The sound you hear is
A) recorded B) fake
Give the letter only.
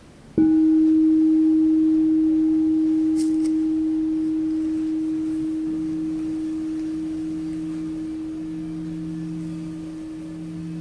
A